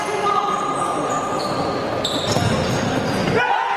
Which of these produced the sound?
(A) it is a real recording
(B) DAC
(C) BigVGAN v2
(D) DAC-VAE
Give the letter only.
A